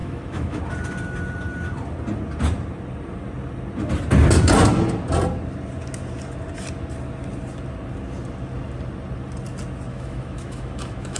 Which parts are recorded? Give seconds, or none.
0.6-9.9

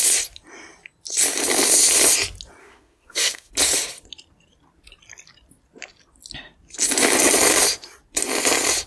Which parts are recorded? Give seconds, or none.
0.0-2.6; 3.5-8.9

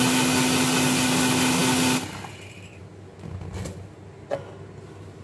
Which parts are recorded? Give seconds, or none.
0.0-5.2